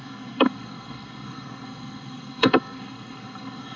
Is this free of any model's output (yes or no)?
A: no